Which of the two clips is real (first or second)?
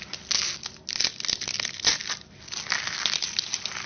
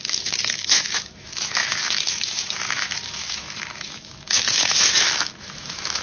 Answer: first